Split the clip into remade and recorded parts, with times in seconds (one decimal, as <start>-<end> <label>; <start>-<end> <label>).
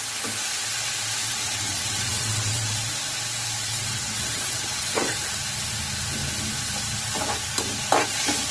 0.0-1.2 recorded; 1.2-2.9 remade; 2.9-3.7 recorded; 3.7-5.2 remade; 5.2-8.5 recorded